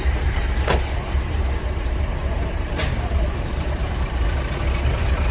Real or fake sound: fake